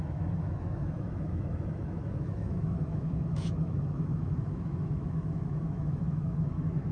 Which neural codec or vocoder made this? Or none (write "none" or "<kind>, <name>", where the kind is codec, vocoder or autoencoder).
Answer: autoencoder, DAC-VAE